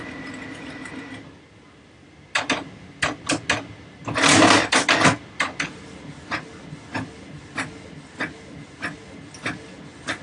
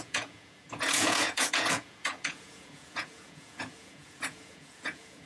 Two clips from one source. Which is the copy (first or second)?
second